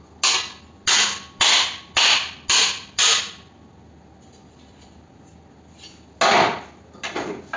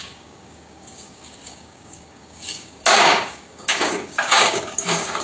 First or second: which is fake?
second